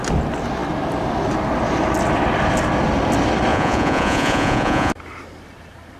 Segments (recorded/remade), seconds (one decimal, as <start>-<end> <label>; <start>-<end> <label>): 0.0-3.5 recorded; 3.5-4.9 remade; 4.9-6.0 recorded

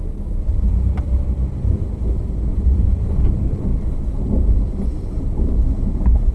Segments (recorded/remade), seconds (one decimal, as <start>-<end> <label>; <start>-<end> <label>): 0.0-2.5 recorded; 2.5-3.2 remade; 3.2-6.3 recorded

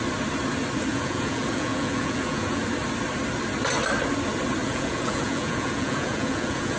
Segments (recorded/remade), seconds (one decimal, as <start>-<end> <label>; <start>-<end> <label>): 0.0-0.9 recorded; 0.9-2.6 remade; 2.6-4.6 recorded; 4.6-6.8 remade